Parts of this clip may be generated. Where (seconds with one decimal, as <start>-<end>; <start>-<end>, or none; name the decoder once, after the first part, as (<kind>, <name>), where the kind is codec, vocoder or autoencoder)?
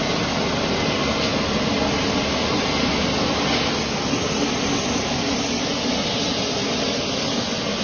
none